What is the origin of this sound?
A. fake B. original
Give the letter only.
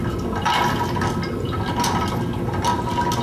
B